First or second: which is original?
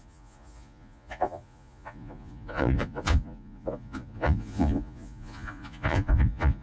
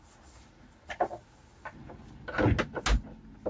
second